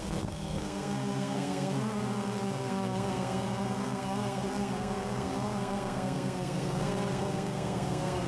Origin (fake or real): fake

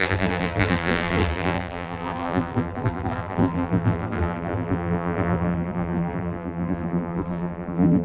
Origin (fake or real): fake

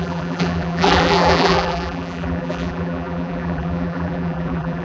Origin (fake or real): fake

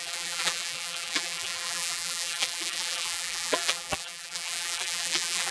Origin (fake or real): fake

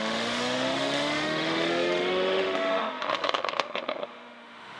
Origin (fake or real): fake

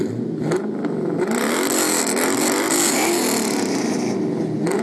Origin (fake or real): real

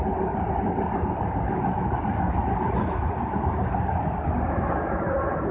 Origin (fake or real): real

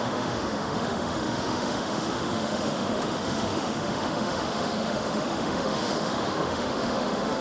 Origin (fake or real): fake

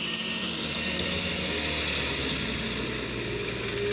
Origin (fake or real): real